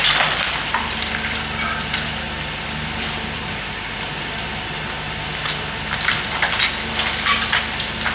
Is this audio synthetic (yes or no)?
no